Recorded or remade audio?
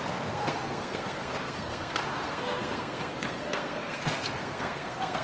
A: remade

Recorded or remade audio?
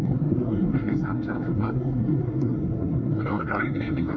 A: remade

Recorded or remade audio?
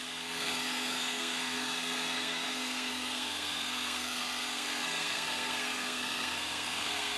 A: remade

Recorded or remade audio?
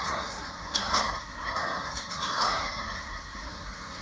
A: remade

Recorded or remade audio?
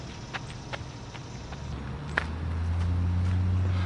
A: recorded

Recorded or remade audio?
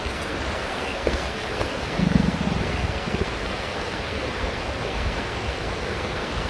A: remade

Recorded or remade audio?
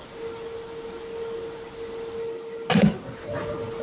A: recorded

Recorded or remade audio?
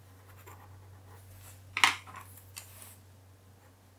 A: recorded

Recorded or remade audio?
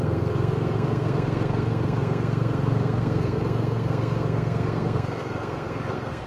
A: remade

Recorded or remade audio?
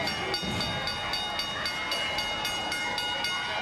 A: recorded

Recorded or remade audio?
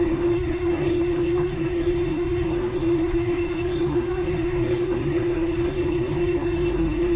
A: remade